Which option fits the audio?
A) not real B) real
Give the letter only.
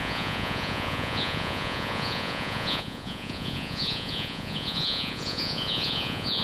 A